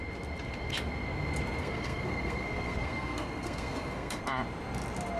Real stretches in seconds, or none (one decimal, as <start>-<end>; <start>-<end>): 0.0-1.6; 4.2-5.2